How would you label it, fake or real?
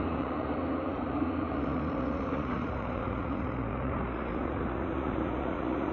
fake